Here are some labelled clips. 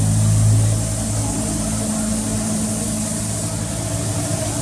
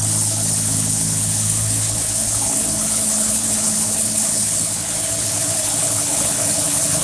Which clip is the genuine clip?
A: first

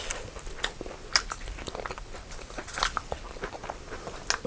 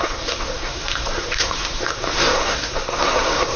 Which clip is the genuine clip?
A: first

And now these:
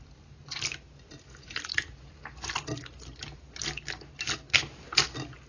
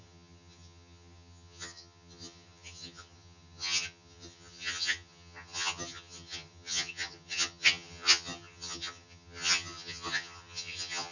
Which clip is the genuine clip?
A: first